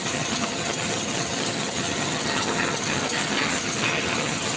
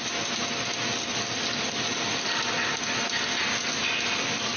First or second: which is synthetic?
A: first